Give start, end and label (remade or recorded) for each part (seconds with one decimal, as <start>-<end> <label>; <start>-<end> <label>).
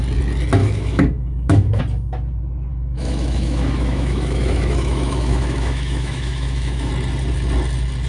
0.0-0.6 recorded; 0.6-1.8 remade; 1.8-2.7 recorded; 2.7-6.9 remade; 6.9-8.1 recorded